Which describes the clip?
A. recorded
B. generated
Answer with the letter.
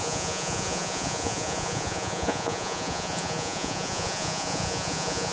B